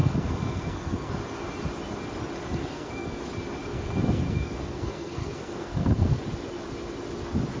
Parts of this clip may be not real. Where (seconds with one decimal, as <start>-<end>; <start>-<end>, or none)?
0.0-1.1; 2.6-3.2; 3.6-6.2